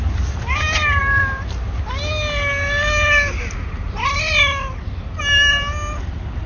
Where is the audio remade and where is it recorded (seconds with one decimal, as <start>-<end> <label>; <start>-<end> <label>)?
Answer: 0.0-6.5 recorded